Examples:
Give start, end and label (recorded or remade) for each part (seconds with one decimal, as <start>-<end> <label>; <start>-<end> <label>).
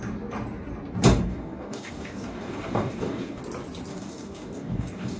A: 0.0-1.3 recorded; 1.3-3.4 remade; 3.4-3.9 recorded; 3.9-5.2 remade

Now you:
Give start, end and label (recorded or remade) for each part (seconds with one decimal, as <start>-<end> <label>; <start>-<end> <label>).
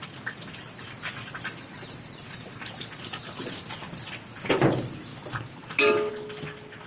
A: 0.0-6.9 recorded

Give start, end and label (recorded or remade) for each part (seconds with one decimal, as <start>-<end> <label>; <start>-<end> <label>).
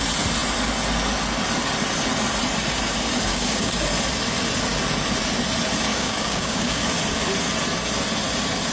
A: 0.0-3.3 recorded; 3.3-3.8 remade; 3.8-5.9 recorded; 5.9-6.9 remade; 6.9-8.7 recorded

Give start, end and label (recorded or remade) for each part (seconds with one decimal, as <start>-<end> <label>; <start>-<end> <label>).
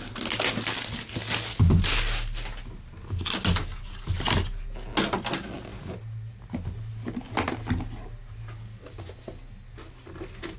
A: 0.0-10.6 recorded